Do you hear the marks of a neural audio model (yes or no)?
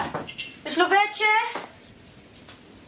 no